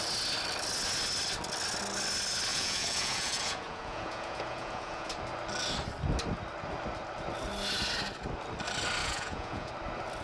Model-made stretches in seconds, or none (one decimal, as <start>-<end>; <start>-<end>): 2.5-5.1; 9.0-9.7